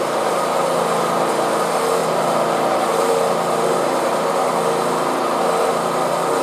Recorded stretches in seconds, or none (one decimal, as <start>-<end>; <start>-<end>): 0.0-2.0; 3.1-3.7; 4.5-6.4